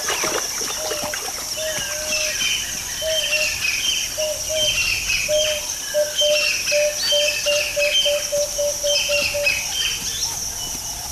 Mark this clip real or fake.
real